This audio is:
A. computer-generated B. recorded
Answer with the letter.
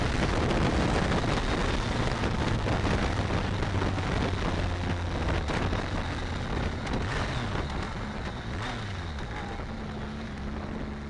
B